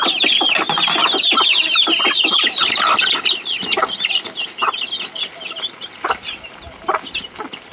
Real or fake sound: real